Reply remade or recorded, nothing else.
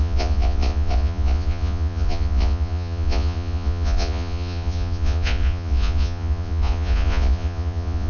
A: remade